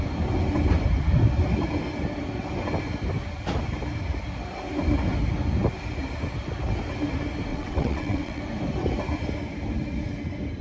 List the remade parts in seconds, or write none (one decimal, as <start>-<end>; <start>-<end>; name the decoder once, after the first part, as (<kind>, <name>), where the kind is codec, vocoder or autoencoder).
7.5-8.4 (vocoder, WaveNeXt)